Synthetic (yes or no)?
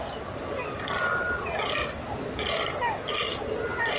no